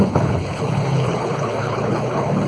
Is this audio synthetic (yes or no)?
yes